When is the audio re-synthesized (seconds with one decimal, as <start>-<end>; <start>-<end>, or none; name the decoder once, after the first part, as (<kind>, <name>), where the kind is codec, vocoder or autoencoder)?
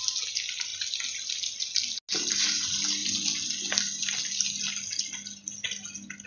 none